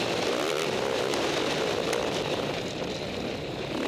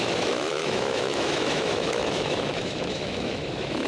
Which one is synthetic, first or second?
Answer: second